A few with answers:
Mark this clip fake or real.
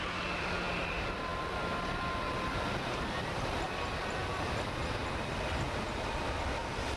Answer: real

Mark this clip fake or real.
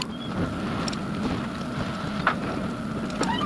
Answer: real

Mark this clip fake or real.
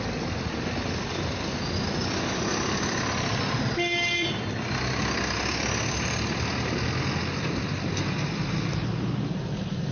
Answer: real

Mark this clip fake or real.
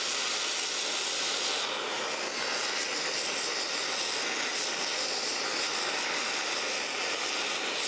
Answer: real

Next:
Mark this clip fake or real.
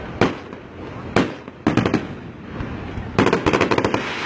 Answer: real